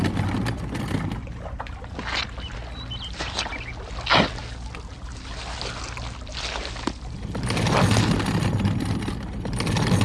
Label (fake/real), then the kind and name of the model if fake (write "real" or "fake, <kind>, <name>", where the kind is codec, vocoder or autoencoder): real